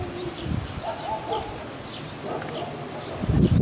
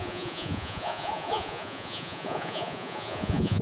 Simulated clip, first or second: second